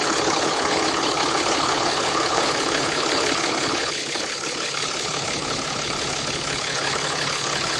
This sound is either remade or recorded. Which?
remade